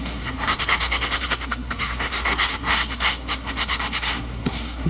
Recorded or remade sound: remade